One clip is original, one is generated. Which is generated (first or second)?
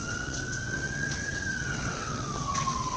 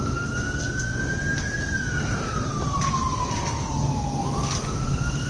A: first